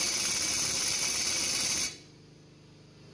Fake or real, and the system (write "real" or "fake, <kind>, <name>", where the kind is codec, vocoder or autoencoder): real